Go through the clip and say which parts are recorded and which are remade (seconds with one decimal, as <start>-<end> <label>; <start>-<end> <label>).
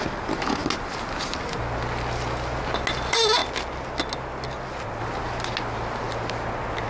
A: 0.0-6.9 recorded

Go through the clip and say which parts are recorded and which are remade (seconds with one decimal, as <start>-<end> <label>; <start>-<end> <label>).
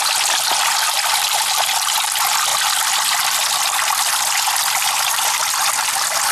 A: 0.0-6.3 recorded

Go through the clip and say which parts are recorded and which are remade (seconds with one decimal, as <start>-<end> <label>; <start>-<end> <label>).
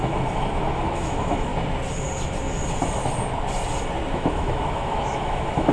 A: 0.0-1.5 remade; 1.5-4.1 recorded; 4.1-5.7 remade